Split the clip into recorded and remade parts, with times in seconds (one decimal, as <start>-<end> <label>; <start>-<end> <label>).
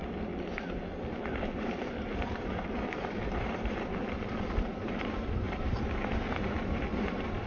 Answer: 0.0-1.4 recorded; 1.4-7.5 remade